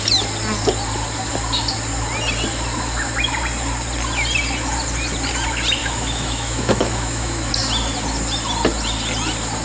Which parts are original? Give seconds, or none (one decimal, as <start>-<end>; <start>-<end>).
0.0-5.8; 7.5-9.6